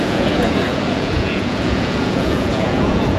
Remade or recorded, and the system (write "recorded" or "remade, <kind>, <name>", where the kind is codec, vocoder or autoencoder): remade, vocoder, Vocos